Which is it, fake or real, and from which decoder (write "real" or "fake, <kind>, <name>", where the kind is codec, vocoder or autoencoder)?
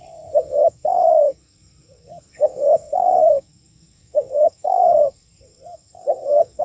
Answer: fake, codec, SNAC